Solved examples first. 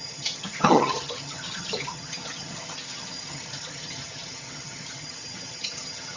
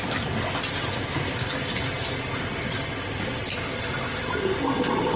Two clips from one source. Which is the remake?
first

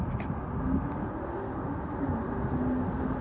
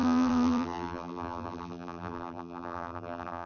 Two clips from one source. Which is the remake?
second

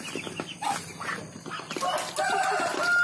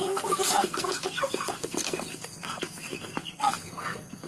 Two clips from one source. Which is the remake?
second